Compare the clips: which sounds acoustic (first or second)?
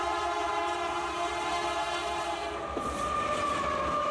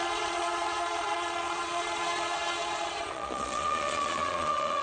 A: first